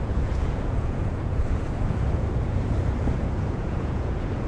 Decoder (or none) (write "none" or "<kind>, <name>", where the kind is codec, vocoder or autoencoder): vocoder, Vocos